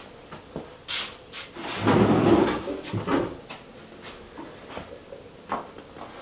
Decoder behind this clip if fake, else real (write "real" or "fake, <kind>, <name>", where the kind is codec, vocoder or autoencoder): real